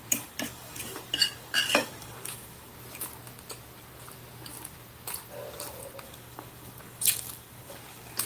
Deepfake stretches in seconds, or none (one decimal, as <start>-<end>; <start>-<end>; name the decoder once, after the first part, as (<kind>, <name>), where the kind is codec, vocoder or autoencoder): 0.0-2.7 (codec, DAC); 6.0-8.3